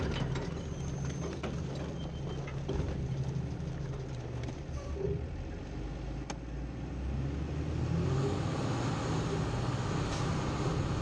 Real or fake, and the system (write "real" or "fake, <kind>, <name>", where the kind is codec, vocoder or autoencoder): real